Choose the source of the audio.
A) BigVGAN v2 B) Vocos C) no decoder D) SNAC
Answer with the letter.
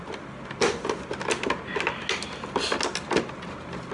C